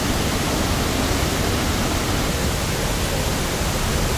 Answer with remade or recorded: recorded